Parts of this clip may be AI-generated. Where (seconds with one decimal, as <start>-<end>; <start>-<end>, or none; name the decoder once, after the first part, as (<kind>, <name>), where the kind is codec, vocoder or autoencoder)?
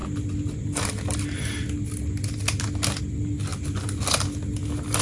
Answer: none